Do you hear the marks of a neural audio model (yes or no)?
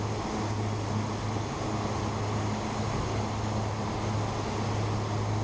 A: no